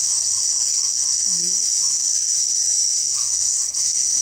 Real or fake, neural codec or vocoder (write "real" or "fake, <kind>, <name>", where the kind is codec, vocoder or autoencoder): fake, codec, SNAC